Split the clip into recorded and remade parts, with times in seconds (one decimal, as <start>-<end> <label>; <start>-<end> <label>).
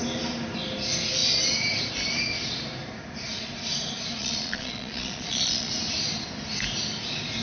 0.0-4.2 recorded; 4.2-5.7 remade; 5.7-7.4 recorded